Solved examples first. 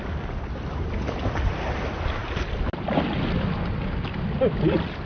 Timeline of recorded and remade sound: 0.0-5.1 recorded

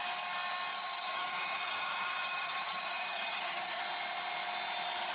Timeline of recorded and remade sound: 0.0-0.7 recorded; 0.7-3.8 remade; 3.8-5.1 recorded

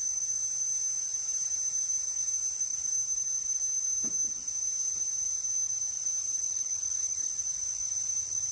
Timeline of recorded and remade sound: 0.0-6.2 recorded; 6.2-7.3 remade; 7.3-8.5 recorded